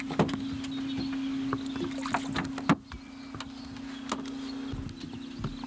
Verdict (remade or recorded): recorded